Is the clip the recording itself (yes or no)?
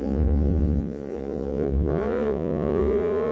no